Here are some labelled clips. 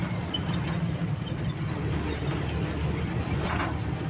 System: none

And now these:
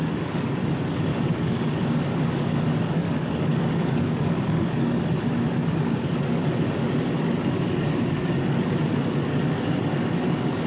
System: codec, DAC